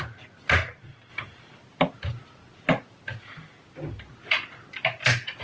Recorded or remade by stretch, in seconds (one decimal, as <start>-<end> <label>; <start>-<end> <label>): 0.0-5.4 recorded